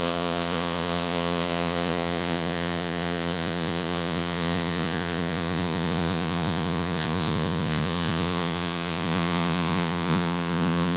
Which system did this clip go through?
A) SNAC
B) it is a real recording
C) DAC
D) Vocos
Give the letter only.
D